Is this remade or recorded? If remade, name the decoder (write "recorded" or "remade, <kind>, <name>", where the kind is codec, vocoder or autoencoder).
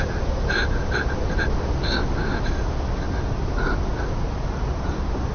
recorded